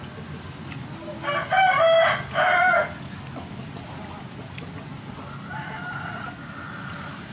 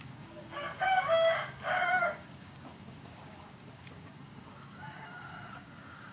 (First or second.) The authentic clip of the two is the first